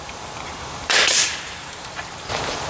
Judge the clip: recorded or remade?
remade